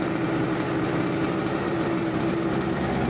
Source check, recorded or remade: recorded